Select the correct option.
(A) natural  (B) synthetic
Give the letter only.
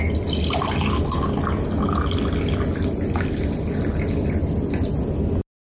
A